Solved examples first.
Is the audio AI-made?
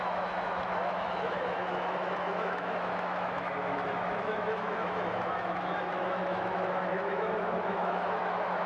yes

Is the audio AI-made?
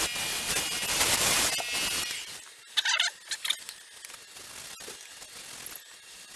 no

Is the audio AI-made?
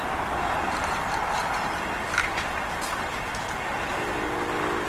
no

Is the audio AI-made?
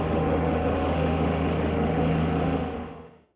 yes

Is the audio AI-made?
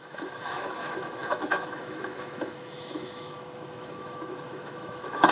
yes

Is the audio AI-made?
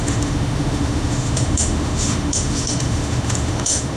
yes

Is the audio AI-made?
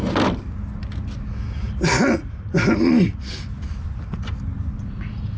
no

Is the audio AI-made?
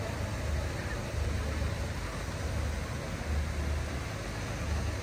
no